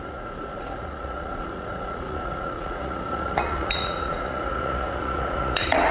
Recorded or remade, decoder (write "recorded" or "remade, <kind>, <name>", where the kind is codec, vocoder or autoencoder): remade, vocoder, Vocos